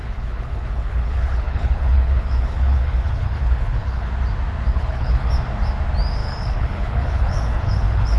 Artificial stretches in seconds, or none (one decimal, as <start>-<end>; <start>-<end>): 0.0-4.1; 4.7-5.3; 6.2-8.2